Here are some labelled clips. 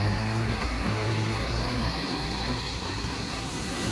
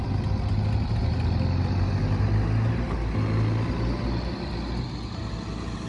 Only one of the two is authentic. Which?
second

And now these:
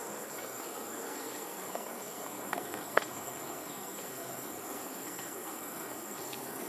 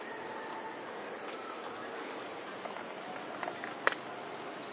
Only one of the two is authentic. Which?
second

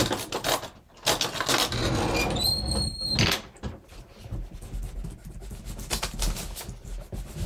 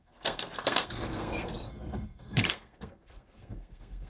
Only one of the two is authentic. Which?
first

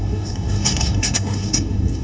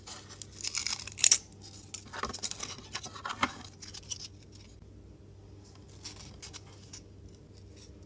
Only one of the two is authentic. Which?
second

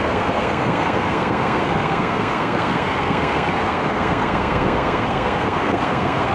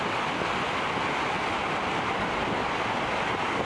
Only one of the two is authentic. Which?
second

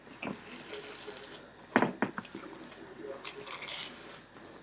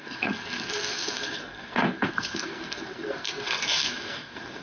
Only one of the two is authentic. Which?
first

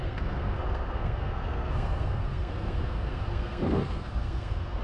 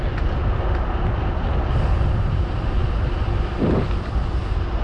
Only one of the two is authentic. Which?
second